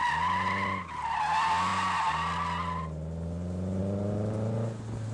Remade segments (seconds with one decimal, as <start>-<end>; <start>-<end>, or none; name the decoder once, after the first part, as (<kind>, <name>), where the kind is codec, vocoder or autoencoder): none